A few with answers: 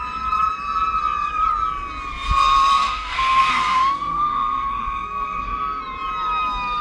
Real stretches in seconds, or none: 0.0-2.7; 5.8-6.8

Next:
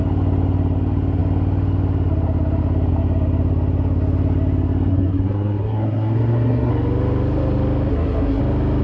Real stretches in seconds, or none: 0.0-4.9; 6.7-7.9; 8.4-8.8

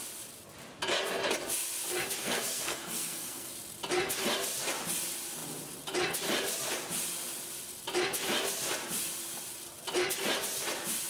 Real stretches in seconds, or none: 0.0-2.2; 3.5-11.1

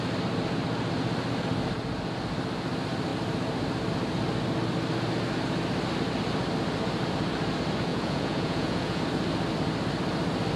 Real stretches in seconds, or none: 0.0-7.9; 9.0-10.6